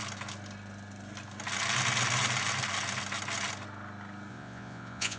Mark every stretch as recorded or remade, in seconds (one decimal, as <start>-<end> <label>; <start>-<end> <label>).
0.0-4.3 recorded; 4.3-5.2 remade